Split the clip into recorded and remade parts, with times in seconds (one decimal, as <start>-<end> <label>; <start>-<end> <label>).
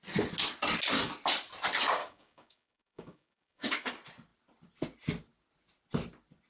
0.0-2.0 recorded; 2.0-3.9 remade; 3.9-6.5 recorded